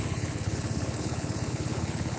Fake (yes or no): yes